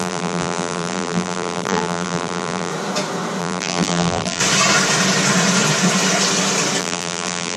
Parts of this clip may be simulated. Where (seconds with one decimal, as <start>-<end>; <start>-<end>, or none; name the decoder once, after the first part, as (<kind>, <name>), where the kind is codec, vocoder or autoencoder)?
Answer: 0.0-2.7 (vocoder, BigVGAN v2); 3.4-4.4; 6.8-7.6